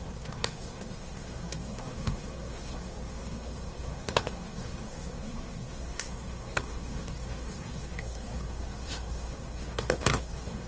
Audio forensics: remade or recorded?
remade